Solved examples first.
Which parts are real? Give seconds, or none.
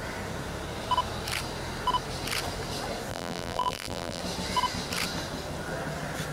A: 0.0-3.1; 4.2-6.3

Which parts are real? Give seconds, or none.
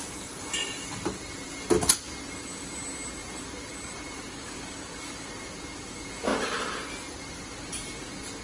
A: 0.0-3.2; 4.2-8.4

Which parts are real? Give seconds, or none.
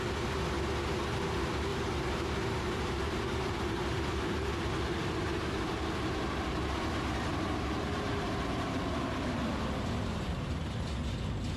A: 0.0-1.7; 6.8-7.3; 10.3-11.6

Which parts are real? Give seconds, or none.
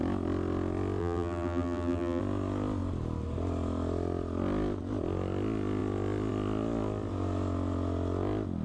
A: 0.0-1.0; 2.2-8.6